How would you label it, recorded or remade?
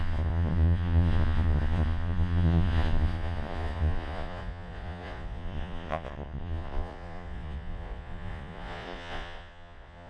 remade